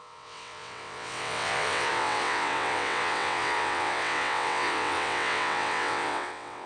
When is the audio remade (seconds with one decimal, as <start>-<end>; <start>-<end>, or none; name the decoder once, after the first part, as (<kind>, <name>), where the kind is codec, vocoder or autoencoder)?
0.0-6.7 (vocoder, WaveNeXt)